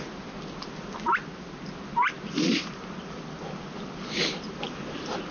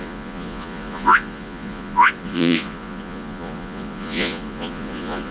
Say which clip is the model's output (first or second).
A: second